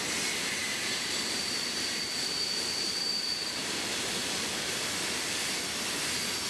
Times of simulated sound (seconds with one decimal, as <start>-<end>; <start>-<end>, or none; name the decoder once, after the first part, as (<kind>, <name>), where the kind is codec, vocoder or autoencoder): 0.6-4.5 (vocoder, BigVGAN v2)